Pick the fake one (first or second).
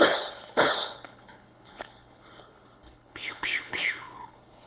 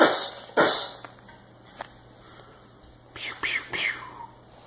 first